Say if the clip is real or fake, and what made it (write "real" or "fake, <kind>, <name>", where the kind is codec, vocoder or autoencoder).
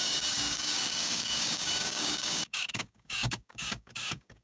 fake, codec, DAC